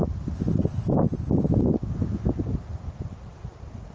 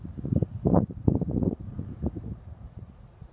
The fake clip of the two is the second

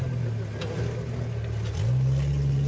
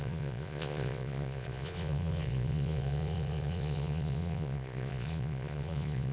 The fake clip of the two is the second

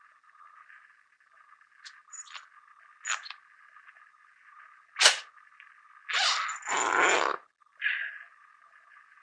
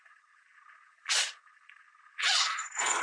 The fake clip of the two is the second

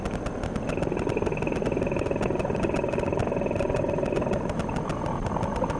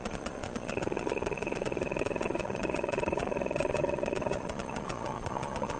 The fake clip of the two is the second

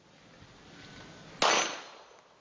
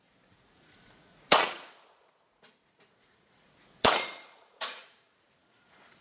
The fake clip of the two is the second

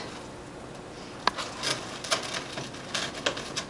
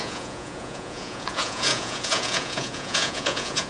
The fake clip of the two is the second